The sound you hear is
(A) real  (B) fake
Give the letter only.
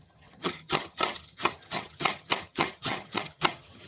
B